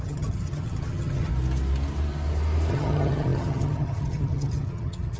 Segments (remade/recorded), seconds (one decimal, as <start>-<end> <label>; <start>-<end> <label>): 0.0-1.3 remade; 1.3-2.7 recorded; 2.7-5.2 remade